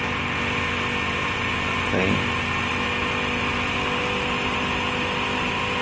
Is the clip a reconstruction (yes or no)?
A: no